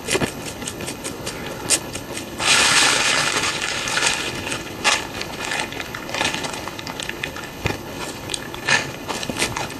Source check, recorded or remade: remade